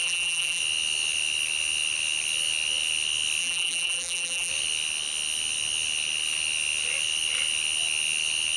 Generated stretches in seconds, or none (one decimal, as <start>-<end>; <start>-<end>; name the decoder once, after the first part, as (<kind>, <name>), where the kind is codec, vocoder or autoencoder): 0.0-0.6 (vocoder, BigVGAN v2); 3.4-4.5